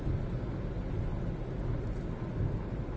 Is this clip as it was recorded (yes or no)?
yes